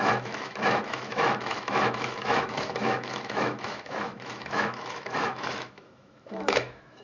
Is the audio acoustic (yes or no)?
no